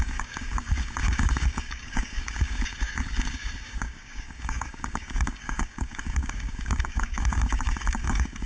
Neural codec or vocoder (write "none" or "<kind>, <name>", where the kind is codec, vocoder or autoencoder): codec, DAC